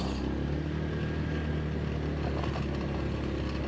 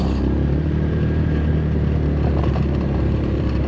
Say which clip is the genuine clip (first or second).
first